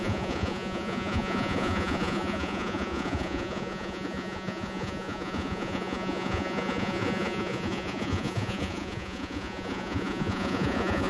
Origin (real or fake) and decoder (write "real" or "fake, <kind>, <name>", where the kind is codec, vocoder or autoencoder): fake, vocoder, Vocos